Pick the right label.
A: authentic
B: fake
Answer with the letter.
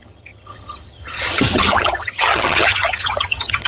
B